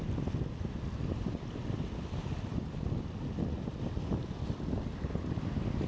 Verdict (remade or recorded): recorded